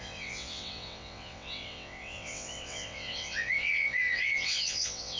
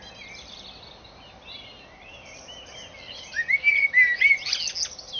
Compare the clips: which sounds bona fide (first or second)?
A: second